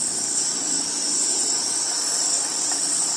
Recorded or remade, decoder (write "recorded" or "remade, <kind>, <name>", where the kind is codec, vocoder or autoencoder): recorded